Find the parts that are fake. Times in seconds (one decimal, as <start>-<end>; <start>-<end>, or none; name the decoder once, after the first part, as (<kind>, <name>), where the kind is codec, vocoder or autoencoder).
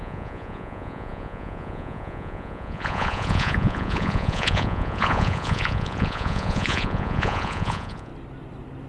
0.0-8.1 (vocoder, Vocos)